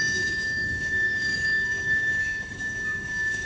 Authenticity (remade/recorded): remade